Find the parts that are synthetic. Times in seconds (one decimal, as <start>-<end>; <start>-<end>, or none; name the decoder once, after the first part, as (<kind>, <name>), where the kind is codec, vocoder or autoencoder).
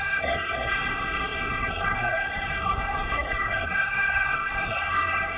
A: 0.0-5.4 (codec, SNAC)